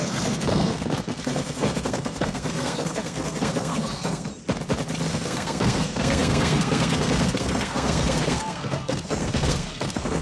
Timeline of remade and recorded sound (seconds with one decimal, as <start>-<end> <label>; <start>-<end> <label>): 0.0-4.3 remade; 4.3-5.1 recorded; 5.1-10.2 remade